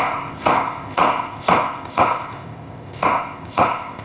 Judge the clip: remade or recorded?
remade